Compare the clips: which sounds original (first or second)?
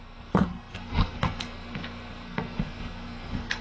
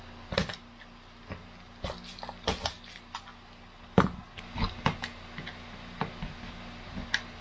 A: second